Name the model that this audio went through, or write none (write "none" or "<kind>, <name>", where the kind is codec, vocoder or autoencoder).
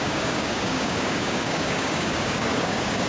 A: codec, DAC